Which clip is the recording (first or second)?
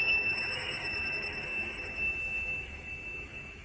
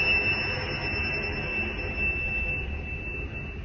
second